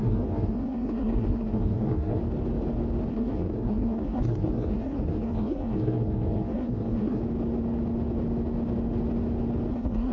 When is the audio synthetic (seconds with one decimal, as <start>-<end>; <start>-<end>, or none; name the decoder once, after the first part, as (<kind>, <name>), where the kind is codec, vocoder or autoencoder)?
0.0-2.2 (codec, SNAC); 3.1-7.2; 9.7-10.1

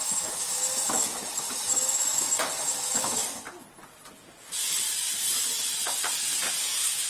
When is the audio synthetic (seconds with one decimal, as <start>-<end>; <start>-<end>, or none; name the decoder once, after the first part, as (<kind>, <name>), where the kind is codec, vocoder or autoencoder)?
0.0-3.2 (autoencoder, DAC-VAE); 6.6-7.1

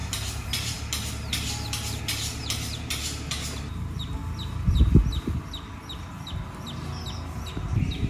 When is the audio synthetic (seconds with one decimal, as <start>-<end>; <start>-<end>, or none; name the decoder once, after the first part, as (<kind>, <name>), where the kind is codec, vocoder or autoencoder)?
0.0-4.2 (vocoder, BigVGAN v2); 7.5-8.1